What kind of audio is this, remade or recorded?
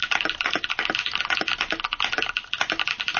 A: recorded